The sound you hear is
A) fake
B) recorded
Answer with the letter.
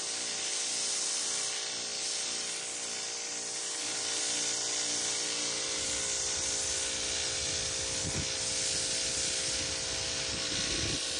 B